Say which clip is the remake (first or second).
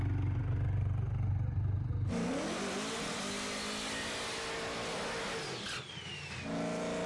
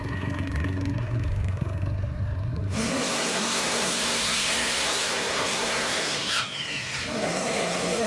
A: second